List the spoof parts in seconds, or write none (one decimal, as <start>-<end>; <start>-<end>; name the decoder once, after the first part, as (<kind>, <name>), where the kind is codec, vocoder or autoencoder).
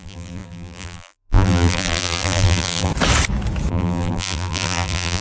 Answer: 0.0-2.9 (vocoder, BigVGAN v2); 3.7-5.2